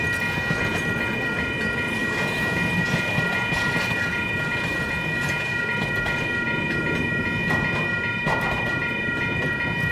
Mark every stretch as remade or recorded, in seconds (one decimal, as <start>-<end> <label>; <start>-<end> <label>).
0.0-9.9 recorded